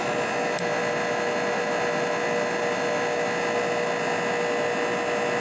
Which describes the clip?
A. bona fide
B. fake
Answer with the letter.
A